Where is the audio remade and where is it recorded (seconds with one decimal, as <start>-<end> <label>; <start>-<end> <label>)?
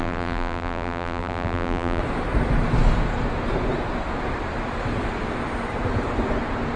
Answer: 0.0-2.0 remade; 2.0-6.8 recorded